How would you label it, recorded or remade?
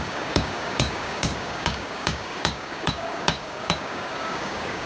remade